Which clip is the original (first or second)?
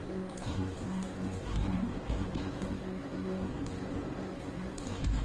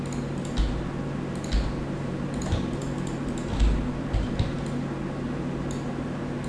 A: second